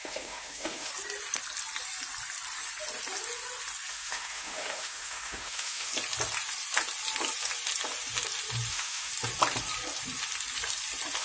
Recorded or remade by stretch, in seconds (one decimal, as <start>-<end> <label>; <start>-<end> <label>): 0.0-0.9 remade; 0.9-3.9 recorded; 3.9-5.9 remade; 5.9-8.7 recorded; 8.7-9.1 remade; 9.1-11.2 recorded